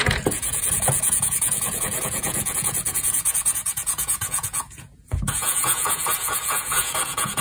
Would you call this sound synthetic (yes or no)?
yes